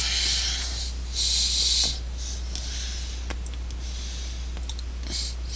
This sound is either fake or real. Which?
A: real